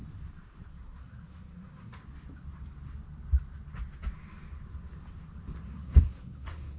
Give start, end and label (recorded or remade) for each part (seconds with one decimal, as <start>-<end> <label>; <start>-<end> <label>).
0.0-0.7 recorded; 0.7-2.0 remade; 2.0-5.7 recorded; 5.7-6.8 remade